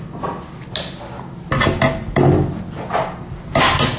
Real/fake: real